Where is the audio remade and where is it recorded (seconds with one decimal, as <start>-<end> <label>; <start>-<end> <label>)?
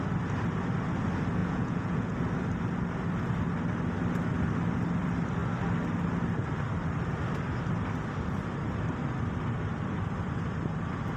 0.0-1.4 recorded; 1.4-2.2 remade; 2.2-11.2 recorded